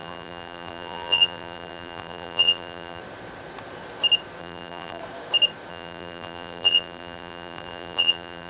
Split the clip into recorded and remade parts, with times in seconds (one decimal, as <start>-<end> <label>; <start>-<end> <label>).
0.0-3.0 remade; 3.0-4.4 recorded; 4.4-5.0 remade; 5.0-5.7 recorded; 5.7-8.5 remade